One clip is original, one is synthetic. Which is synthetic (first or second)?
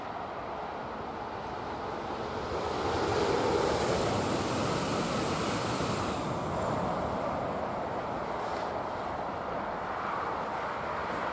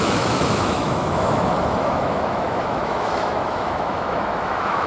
second